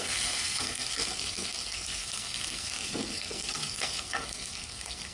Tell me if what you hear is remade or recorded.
remade